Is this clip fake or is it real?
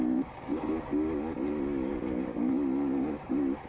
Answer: real